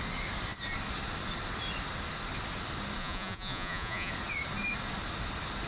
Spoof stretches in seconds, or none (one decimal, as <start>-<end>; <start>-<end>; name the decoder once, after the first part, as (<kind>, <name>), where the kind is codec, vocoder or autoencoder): 3.0-4.1 (vocoder, Vocos)